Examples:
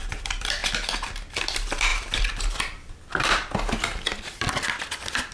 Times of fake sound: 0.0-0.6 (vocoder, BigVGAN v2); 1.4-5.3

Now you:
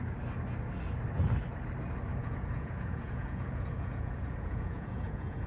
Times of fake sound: 2.1-5.5 (vocoder, Vocos)

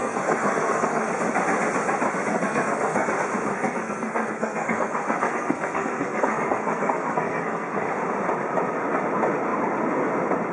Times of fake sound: 0.0-1.1 (codec, SNAC); 2.3-3.1; 3.5-7.9